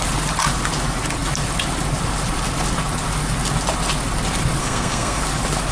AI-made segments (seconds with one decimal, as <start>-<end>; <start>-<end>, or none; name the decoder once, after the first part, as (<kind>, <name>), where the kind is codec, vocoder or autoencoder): 4.6-5.2 (codec, SNAC)